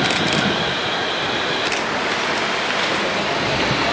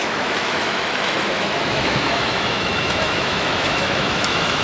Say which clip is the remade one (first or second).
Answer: second